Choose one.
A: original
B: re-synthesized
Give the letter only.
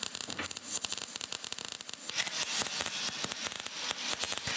A